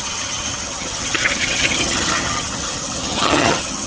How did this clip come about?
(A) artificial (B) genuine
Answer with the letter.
A